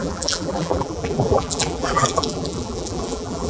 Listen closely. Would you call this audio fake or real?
fake